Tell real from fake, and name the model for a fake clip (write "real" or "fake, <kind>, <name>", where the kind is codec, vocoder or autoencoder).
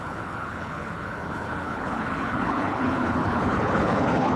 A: fake, codec, HILCodec